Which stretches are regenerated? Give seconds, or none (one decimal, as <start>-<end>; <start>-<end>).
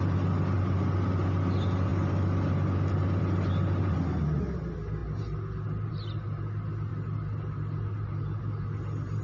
none